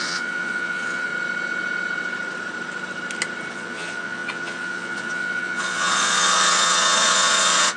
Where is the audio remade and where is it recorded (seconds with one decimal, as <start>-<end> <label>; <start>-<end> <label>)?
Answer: 0.0-1.1 remade; 1.1-3.5 recorded; 3.5-7.8 remade